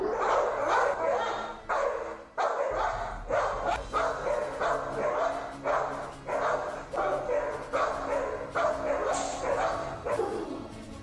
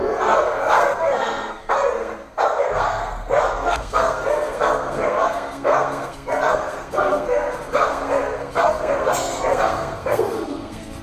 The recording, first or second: first